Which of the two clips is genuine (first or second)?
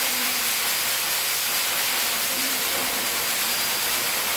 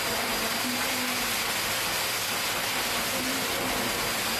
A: second